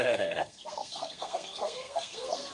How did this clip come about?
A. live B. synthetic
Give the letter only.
B